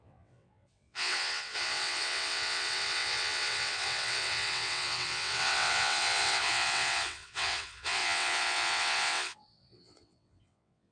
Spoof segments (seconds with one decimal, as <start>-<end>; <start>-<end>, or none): 0.0-10.9